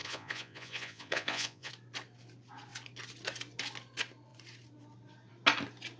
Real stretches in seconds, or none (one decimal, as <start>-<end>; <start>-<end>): 1.7-6.0